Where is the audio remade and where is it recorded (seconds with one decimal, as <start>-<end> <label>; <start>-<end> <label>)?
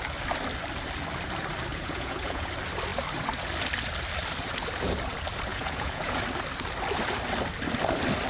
0.0-1.7 recorded; 1.7-2.5 remade; 2.5-5.5 recorded; 5.5-6.2 remade; 6.2-8.3 recorded